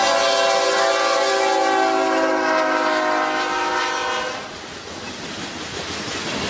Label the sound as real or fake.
real